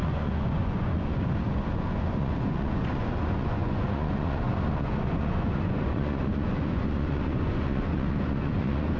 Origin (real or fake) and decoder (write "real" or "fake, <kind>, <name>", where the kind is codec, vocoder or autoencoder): fake, vocoder, Vocos